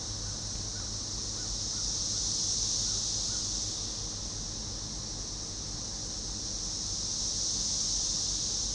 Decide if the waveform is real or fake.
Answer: real